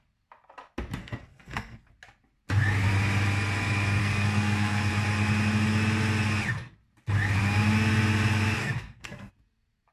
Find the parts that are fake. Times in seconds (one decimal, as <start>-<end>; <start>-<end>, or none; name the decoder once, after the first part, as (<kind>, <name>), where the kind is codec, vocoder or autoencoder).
1.0-1.9 (codec, SNAC); 4.0-4.9; 8.6-9.3